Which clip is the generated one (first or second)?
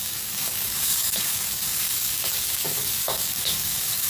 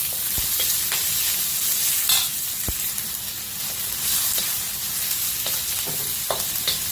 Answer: first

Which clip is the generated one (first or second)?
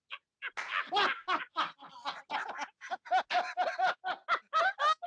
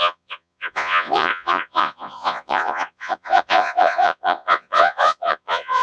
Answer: second